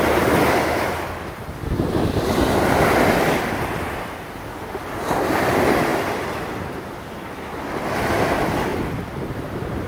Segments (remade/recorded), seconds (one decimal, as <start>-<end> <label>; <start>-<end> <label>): 0.0-9.9 recorded